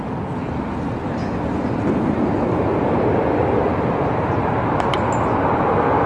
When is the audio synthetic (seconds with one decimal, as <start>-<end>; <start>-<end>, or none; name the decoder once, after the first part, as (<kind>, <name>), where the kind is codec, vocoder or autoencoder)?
none

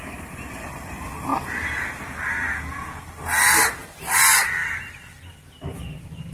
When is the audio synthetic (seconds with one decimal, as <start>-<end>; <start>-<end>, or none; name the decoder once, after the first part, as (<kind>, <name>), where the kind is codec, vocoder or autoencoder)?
none

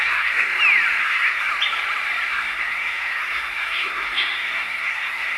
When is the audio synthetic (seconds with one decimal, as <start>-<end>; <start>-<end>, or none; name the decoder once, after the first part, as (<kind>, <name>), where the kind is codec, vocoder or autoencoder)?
0.0-0.5 (codec, SNAC); 1.0-1.5; 2.3-5.4

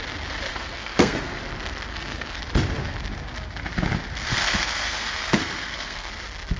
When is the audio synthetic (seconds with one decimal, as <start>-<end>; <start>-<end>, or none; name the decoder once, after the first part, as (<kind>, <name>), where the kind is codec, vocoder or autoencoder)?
0.5-1.4 (codec, SNAC); 1.9-2.4; 4.3-6.1

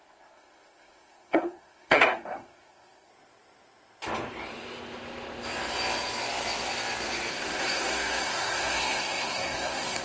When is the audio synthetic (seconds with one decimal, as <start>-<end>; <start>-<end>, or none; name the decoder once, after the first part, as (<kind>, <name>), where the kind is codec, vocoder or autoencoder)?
0.0-3.1 (codec, SNAC); 7.3-10.0

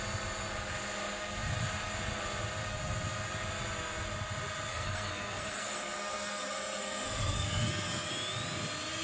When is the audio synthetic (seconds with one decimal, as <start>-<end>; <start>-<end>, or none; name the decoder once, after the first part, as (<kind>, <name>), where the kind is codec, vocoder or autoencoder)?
4.7-8.1 (codec, SNAC)